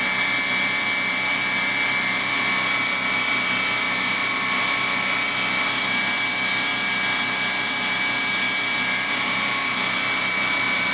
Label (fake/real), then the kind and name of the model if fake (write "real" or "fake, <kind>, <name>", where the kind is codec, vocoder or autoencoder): real